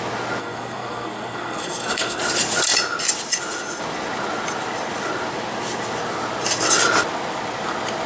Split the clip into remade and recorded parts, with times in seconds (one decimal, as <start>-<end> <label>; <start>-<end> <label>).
0.0-0.4 recorded; 0.4-2.2 remade; 2.2-8.1 recorded